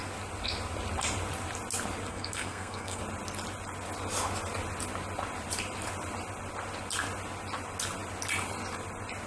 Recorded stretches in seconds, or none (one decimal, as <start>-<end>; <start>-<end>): 0.0-2.1; 3.0-9.3